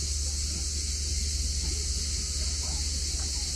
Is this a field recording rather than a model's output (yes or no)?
yes